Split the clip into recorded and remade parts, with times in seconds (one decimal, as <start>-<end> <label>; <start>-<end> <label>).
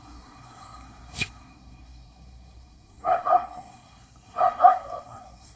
0.0-5.6 remade